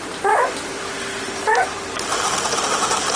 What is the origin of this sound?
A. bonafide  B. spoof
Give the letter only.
A